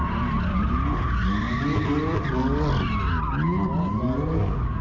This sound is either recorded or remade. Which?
recorded